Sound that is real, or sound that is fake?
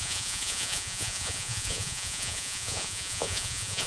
fake